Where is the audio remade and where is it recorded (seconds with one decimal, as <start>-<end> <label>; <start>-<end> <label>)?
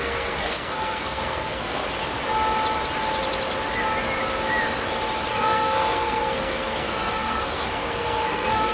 0.0-1.8 remade; 1.8-5.3 recorded; 5.3-8.7 remade